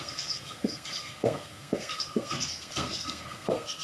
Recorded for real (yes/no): no